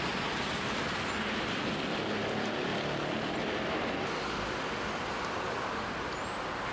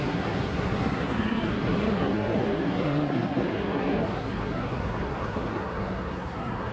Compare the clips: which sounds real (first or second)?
first